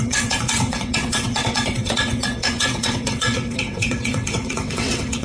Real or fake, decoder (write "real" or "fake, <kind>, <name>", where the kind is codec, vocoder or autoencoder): fake, vocoder, WaveNeXt